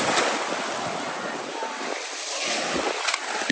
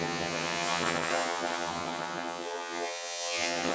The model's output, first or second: second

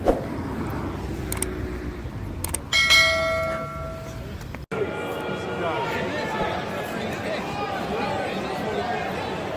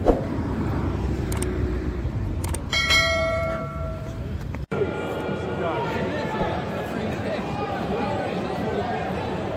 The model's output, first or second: second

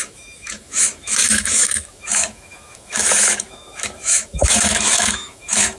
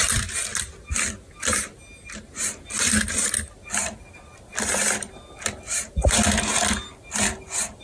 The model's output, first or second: first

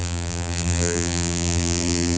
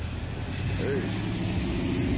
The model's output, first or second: first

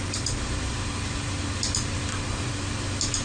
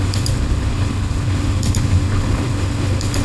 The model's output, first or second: second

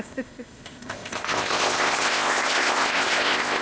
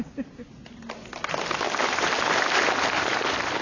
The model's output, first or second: first